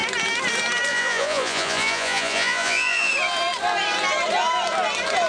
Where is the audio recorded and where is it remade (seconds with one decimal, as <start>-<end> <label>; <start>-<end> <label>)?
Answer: 0.0-0.9 recorded; 0.9-3.1 remade; 3.1-5.3 recorded

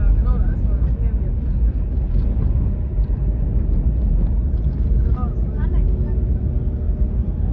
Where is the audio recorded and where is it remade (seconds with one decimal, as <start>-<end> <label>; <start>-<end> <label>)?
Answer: 0.0-7.5 recorded